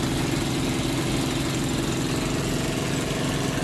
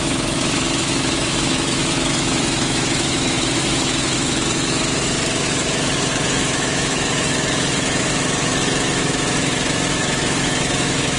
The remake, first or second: second